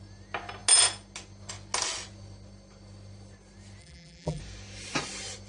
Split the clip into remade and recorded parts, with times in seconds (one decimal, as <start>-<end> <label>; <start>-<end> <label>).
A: 0.0-3.8 recorded; 3.8-4.4 remade; 4.4-5.5 recorded